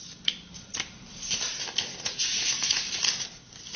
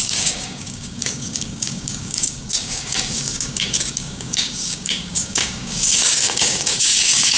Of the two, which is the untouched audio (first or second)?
first